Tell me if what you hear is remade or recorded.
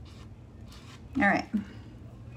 recorded